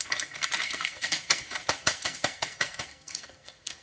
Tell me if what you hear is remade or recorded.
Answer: remade